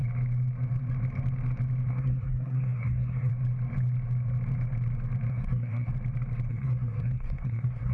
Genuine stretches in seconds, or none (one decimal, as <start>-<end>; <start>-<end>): 0.0-1.9; 3.3-5.3; 5.9-6.5

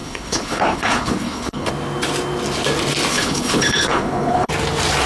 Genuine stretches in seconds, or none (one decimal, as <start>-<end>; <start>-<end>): 1.7-3.1; 4.5-5.1

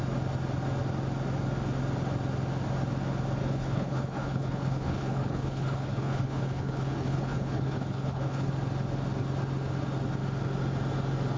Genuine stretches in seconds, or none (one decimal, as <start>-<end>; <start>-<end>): 0.0-3.4; 8.5-11.4